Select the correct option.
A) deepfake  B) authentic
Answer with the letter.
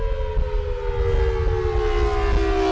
B